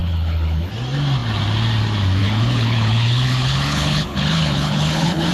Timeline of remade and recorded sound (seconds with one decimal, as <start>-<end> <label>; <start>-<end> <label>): 0.0-0.7 remade; 0.7-2.2 recorded; 2.2-5.3 remade

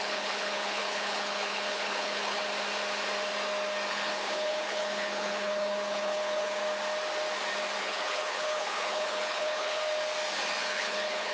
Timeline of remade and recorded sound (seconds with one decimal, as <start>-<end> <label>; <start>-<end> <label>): 0.0-2.4 remade; 2.4-3.9 recorded; 3.9-6.6 remade; 6.6-7.8 recorded; 7.8-9.8 remade; 9.8-10.6 recorded; 10.6-11.3 remade

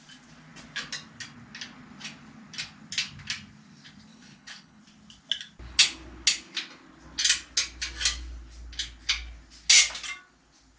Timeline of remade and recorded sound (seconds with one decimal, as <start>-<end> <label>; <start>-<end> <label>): 0.0-4.1 recorded; 4.1-4.8 remade; 4.8-10.8 recorded

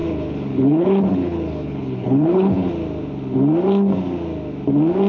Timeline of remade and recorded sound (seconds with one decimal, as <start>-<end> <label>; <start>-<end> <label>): 0.0-2.7 remade; 2.7-5.1 recorded